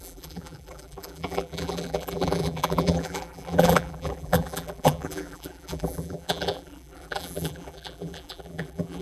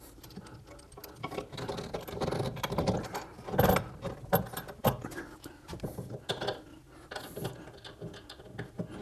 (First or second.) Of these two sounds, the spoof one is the first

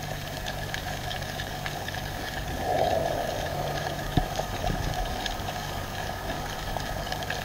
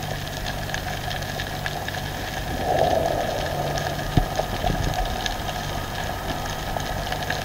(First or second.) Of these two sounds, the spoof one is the first